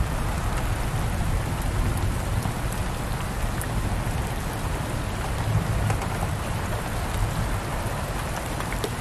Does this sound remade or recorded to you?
recorded